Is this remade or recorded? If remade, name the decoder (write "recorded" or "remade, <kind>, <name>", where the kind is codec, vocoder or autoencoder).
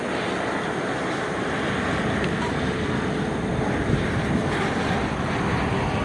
recorded